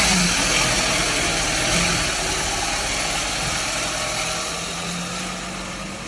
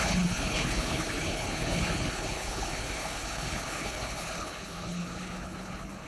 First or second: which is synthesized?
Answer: second